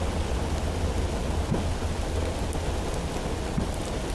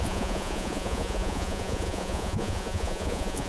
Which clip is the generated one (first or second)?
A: second